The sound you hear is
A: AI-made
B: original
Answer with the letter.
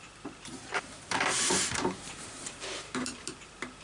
A